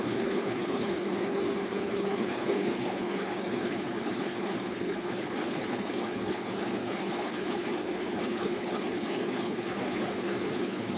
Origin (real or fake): fake